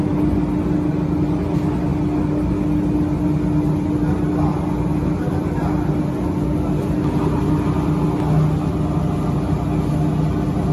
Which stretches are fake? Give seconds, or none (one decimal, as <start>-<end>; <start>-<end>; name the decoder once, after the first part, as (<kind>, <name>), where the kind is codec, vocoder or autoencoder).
none